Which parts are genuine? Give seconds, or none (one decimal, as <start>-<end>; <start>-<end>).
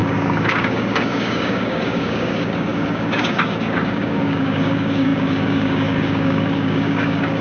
none